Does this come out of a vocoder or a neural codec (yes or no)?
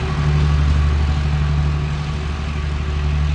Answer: no